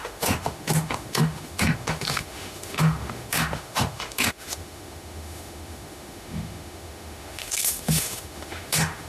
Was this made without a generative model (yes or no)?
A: no